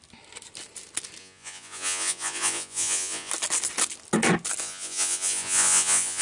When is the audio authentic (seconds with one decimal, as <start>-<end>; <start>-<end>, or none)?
0.0-1.2; 3.3-4.6